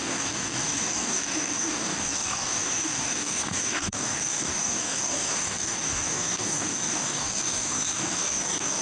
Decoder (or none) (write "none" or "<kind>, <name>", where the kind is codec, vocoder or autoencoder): codec, DAC